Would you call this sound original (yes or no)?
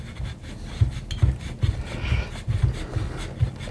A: yes